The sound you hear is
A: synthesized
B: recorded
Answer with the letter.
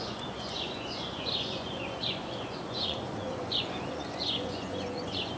A